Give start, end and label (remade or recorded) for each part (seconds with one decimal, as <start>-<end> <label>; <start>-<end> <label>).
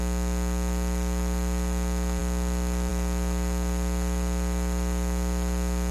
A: 0.0-5.9 recorded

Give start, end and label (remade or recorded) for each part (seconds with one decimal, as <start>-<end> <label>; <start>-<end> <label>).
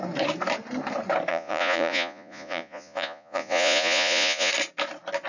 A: 0.0-1.3 recorded; 1.3-4.5 remade; 4.5-5.3 recorded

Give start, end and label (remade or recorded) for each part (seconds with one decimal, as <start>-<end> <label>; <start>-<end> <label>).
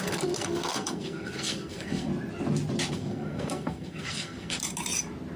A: 0.0-2.1 remade; 2.1-2.9 recorded; 2.9-4.6 remade; 4.6-5.4 recorded